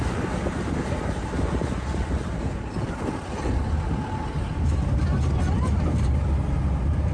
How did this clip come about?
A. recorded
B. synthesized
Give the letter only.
B